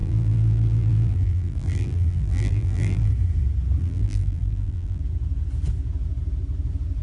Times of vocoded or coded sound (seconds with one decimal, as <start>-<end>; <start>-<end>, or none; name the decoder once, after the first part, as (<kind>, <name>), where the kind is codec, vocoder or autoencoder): 0.0-3.1 (vocoder, BigVGAN v2); 3.8-5.0